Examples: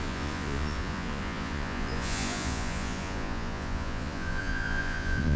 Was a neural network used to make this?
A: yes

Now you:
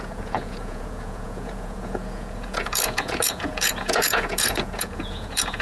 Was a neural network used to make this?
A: yes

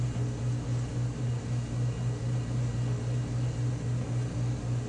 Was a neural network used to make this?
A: no